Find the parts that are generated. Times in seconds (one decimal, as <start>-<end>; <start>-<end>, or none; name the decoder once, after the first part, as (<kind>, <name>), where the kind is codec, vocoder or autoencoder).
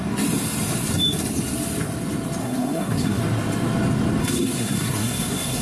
2.4-3.2 (codec, SNAC); 4.2-5.6